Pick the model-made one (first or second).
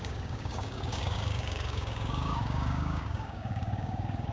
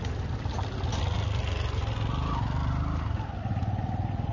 first